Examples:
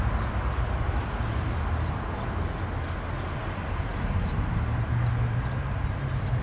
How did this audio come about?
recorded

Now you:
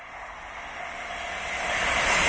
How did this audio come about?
recorded